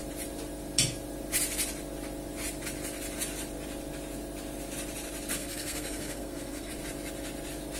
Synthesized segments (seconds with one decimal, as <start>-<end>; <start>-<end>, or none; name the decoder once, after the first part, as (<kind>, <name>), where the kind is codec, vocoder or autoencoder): 5.3-6.7 (codec, SNAC)